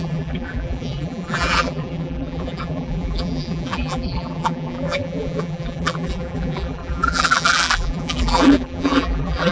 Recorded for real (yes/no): no